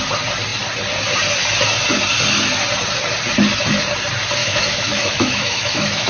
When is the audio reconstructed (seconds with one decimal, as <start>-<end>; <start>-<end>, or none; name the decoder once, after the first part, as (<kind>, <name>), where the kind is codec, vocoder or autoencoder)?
4.4-6.1 (autoencoder, DAC-VAE)